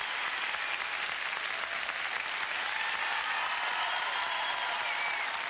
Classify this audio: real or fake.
real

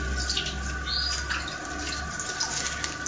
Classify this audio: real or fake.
real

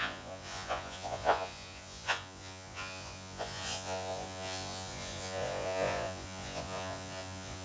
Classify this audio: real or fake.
fake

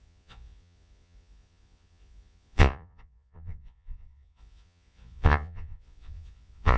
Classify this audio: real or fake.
fake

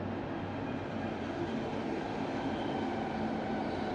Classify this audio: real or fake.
real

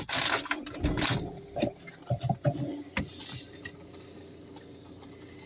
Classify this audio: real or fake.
real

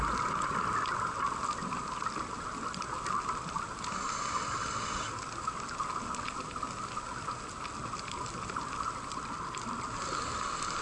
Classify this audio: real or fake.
real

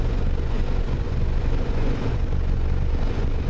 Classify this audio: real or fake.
fake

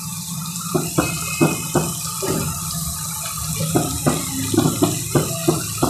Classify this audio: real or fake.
real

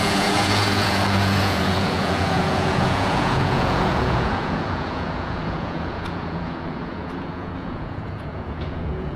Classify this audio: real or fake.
fake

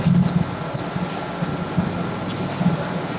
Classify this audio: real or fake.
real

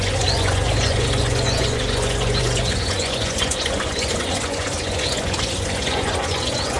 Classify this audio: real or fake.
fake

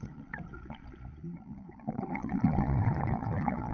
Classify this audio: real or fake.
fake